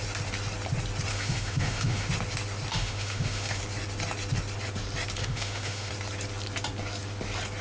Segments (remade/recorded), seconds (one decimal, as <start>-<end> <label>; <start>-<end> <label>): 0.0-1.1 recorded; 1.1-2.1 remade; 2.1-2.7 recorded; 2.7-3.6 remade; 3.6-5.2 recorded; 5.2-5.9 remade; 5.9-7.6 recorded